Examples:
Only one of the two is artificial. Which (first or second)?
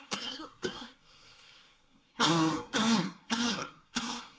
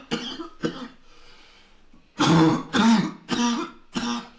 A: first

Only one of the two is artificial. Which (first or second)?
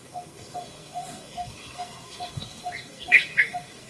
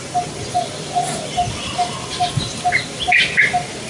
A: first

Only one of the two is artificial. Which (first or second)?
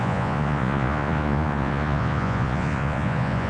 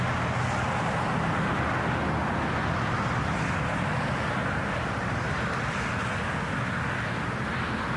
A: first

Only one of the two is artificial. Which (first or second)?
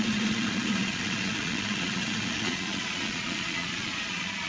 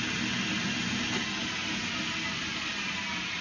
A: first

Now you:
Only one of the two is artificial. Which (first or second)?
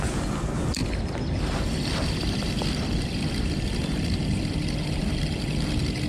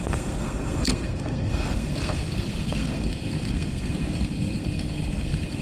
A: second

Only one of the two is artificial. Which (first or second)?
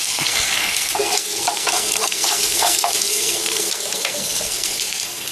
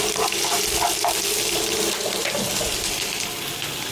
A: first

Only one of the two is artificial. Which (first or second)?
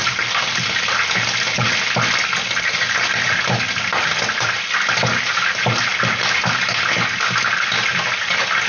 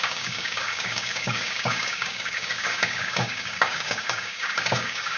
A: second